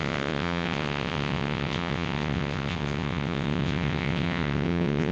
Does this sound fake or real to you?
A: fake